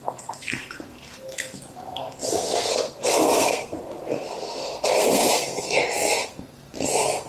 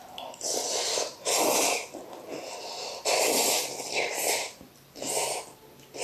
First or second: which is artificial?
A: first